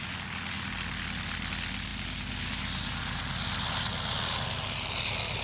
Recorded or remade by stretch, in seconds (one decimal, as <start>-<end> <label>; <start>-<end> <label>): 0.0-5.4 recorded